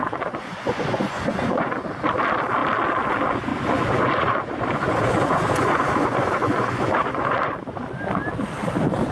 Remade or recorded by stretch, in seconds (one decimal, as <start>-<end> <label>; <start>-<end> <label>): 0.0-1.8 remade; 1.8-3.5 recorded; 3.5-7.5 remade; 7.5-9.1 recorded